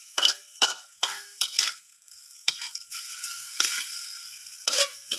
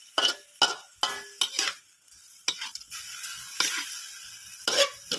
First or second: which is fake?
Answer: first